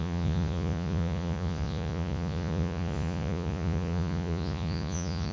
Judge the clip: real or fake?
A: fake